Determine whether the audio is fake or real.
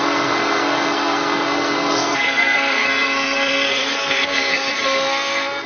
fake